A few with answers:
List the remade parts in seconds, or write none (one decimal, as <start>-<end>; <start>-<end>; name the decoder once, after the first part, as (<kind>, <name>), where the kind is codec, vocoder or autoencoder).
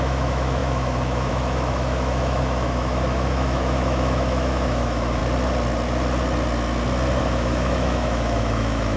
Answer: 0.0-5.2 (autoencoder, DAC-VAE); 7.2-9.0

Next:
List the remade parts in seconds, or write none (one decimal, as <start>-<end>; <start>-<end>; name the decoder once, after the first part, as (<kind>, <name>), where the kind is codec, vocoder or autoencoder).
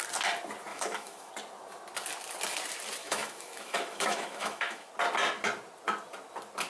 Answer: 0.7-1.3 (autoencoder, DAC-VAE); 3.0-4.9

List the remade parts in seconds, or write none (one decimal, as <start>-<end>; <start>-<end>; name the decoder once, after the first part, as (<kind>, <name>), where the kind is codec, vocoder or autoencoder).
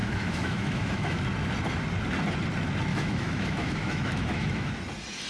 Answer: 0.0-1.2 (autoencoder, DAC-VAE); 2.9-4.7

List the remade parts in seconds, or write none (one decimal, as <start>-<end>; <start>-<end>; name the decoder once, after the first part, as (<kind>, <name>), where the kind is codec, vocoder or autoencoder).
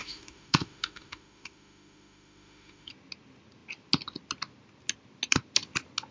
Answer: 0.0-2.9 (autoencoder, DAC-VAE)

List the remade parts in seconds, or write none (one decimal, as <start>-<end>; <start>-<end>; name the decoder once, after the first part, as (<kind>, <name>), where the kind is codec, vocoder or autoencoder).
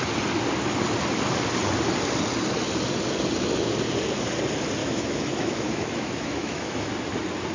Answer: 4.8-6.9 (autoencoder, DAC-VAE)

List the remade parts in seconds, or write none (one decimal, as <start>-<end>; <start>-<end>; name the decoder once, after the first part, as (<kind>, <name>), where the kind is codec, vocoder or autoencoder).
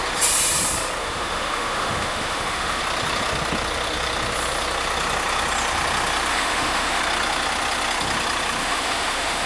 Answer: 1.0-2.8 (autoencoder, DAC-VAE); 6.3-7.0; 8.6-9.5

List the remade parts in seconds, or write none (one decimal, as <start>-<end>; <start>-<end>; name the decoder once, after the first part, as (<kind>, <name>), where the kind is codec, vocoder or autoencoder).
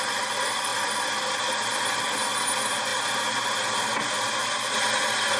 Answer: none